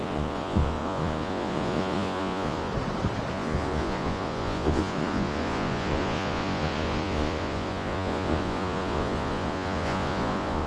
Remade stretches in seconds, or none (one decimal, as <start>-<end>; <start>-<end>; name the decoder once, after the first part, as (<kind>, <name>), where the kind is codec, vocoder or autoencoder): 0.0-2.7 (vocoder, Vocos); 3.3-10.7